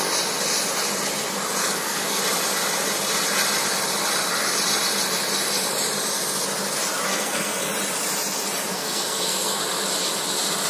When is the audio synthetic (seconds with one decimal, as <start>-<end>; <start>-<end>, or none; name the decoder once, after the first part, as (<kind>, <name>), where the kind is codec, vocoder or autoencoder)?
1.6-2.2 (codec, SNAC); 7.1-7.7; 8.7-9.6

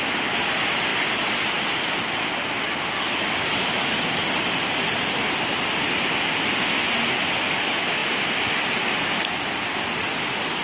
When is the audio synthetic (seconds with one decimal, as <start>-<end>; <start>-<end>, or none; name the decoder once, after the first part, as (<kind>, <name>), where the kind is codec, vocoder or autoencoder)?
none

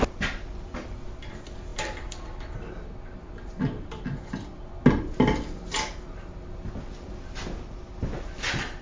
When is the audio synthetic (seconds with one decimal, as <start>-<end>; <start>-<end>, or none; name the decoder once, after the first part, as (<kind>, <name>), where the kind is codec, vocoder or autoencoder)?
none

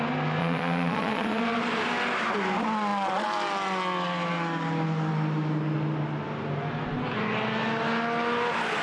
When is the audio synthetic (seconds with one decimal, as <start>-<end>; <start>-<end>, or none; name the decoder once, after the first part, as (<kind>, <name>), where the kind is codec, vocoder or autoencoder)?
0.4-1.4 (vocoder, Vocos)

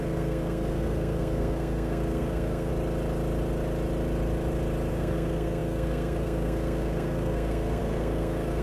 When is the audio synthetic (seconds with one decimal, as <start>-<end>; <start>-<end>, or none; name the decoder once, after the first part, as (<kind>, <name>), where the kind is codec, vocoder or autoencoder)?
0.0-2.7 (codec, SNAC); 4.9-8.6

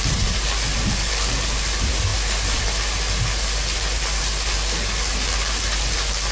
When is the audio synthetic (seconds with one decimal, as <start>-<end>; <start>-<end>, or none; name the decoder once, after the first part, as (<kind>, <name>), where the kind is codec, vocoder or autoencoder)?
none

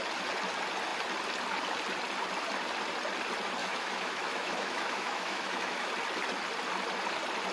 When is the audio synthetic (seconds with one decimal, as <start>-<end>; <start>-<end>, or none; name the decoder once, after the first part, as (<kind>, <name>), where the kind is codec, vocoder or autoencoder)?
3.6-5.9 (autoencoder, DAC-VAE)

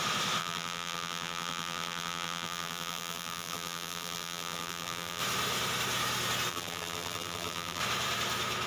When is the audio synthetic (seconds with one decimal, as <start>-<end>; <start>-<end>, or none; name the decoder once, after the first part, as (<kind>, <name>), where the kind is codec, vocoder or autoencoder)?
0.4-5.2 (vocoder, BigVGAN v2); 6.5-7.8